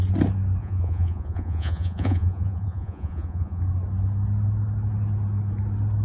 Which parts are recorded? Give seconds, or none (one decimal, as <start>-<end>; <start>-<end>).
0.0-0.6; 3.6-6.0